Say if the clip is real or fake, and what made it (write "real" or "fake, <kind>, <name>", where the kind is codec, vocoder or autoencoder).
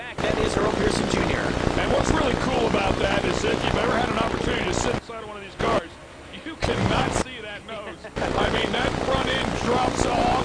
real